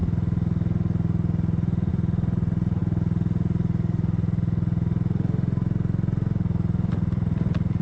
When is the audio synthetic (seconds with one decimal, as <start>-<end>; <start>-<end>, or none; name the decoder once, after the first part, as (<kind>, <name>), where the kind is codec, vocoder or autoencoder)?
1.9-2.8 (vocoder, BigVGAN v2); 6.9-7.8